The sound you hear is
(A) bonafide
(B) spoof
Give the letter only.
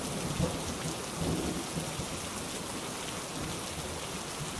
A